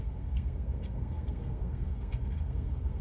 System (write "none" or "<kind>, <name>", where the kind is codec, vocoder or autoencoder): codec, SNAC